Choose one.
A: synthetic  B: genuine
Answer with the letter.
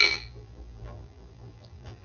A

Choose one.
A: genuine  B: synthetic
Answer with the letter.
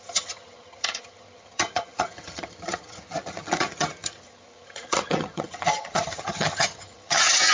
B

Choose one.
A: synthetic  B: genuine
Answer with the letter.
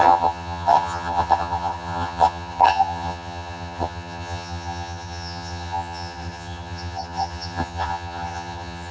A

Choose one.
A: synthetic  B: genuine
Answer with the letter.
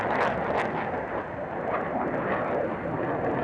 B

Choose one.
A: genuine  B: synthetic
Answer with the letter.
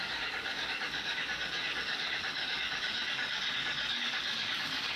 B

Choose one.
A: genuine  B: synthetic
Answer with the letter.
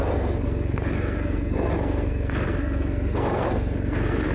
B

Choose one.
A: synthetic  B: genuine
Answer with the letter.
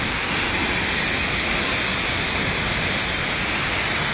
B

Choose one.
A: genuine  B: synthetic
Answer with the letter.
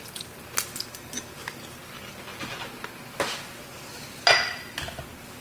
A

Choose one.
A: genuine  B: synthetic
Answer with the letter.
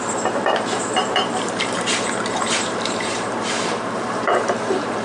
B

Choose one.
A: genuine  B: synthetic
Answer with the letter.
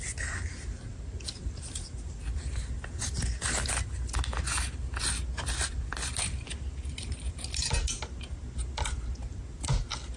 A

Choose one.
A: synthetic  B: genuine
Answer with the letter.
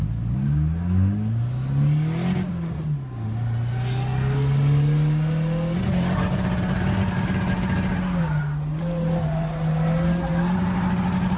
B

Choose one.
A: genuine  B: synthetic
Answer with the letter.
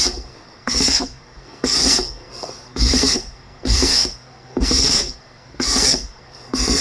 B